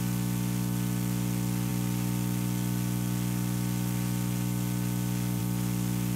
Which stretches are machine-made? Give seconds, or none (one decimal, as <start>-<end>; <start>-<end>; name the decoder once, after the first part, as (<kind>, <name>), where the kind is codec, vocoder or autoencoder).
none